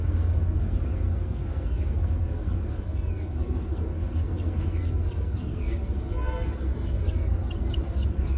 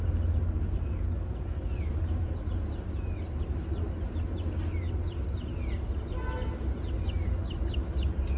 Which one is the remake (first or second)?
first